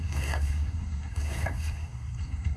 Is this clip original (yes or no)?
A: no